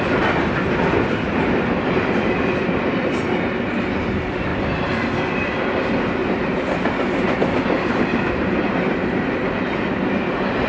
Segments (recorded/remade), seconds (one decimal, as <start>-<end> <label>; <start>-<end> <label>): 0.0-10.7 recorded